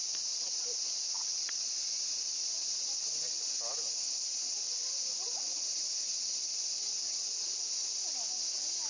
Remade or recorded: recorded